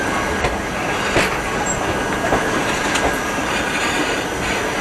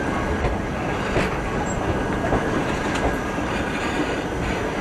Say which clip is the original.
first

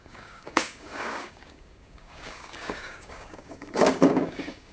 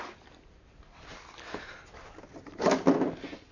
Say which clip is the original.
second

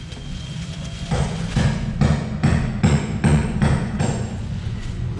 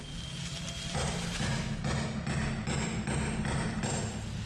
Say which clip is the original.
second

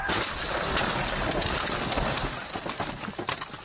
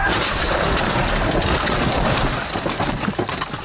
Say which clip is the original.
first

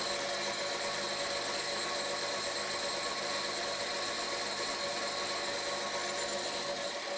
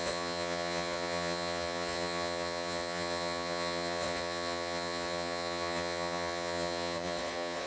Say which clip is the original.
first